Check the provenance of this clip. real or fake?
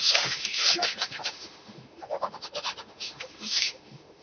fake